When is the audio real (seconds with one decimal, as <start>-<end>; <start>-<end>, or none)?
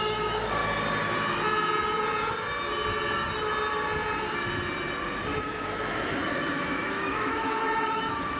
0.6-5.4